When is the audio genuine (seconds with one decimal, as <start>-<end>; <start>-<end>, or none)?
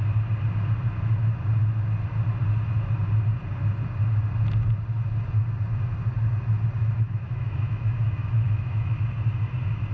0.0-6.8; 9.0-9.9